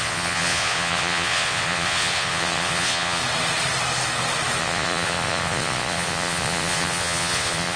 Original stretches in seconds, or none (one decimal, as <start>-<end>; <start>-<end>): 3.2-4.6